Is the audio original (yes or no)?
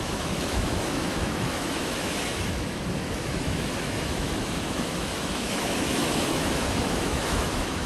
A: no